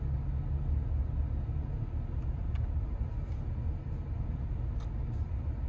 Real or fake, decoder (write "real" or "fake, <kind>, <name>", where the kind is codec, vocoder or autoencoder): real